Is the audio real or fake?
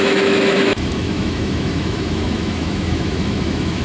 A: fake